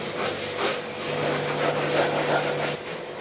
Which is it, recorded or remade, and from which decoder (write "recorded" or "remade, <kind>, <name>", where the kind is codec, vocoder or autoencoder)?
recorded